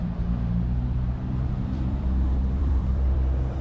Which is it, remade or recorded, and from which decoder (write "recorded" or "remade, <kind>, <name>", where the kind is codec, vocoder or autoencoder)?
remade, vocoder, BigVGAN v2